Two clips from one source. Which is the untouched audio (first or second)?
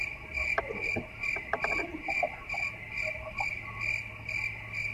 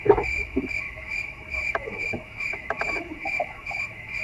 first